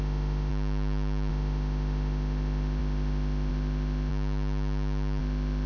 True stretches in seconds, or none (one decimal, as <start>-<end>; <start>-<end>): 0.5-1.3; 4.1-5.2